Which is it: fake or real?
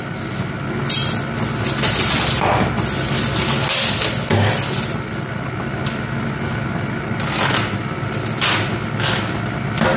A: real